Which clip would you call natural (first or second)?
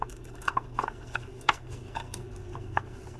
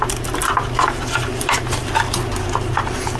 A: second